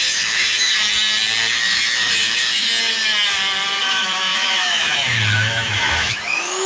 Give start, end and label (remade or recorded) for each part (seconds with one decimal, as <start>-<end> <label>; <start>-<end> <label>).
0.0-0.8 remade; 0.8-1.5 recorded; 1.5-2.7 remade; 2.7-3.8 recorded; 3.8-6.7 remade